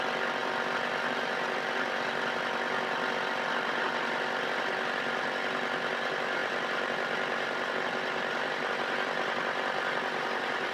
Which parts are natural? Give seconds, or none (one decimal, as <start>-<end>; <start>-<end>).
0.0-10.7